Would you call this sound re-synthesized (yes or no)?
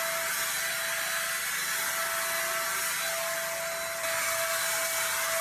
no